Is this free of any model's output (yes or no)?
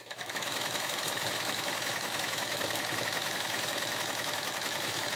no